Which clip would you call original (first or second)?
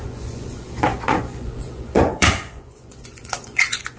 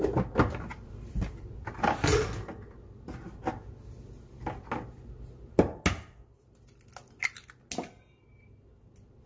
second